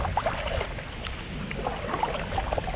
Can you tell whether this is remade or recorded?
recorded